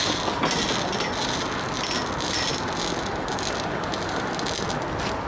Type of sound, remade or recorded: recorded